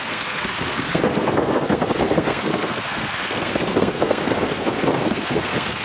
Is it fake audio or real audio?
fake